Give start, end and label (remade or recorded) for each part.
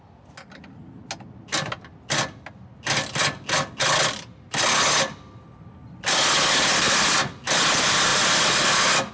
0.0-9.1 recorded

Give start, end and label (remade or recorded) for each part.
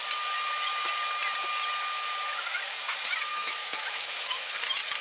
0.0-3.3 recorded; 3.3-4.5 remade; 4.5-5.0 recorded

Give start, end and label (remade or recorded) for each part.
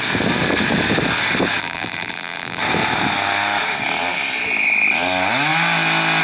0.0-1.6 recorded; 1.6-2.6 remade; 2.6-6.2 recorded